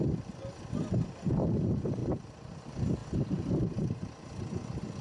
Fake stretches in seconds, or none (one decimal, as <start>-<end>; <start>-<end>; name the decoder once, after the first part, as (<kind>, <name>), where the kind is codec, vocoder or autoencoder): 2.0-2.6 (vocoder, BigVGAN v2)